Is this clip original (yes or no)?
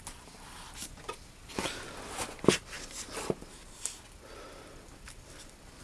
yes